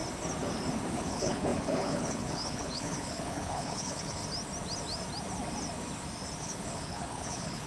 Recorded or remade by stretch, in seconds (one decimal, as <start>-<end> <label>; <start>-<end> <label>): 0.0-0.9 recorded; 0.9-4.2 remade; 4.2-6.4 recorded; 6.4-7.7 remade